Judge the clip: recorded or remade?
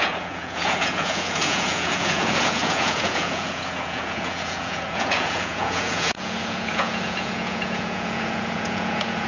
remade